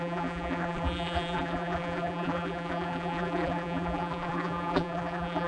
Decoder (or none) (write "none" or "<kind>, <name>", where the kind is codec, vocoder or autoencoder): vocoder, BigVGAN v2